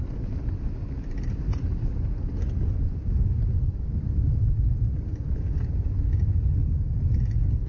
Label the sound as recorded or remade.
recorded